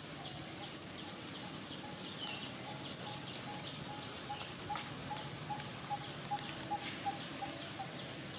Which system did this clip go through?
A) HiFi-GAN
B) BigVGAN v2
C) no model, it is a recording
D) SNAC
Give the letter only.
B